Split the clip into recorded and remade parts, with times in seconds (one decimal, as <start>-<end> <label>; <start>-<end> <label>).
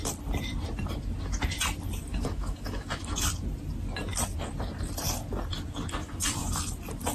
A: 0.0-2.1 recorded; 2.1-3.3 remade; 3.3-6.0 recorded; 6.0-6.6 remade; 6.6-7.1 recorded